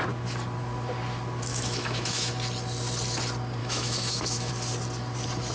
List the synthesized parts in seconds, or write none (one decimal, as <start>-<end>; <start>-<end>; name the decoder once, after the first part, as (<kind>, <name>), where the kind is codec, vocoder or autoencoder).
1.5-2.3 (autoencoder, DAC-VAE); 3.6-4.5